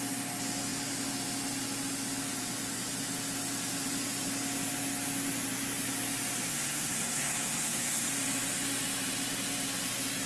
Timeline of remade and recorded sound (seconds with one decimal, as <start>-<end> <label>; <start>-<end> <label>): 0.0-6.5 recorded; 6.5-8.1 remade; 8.1-10.3 recorded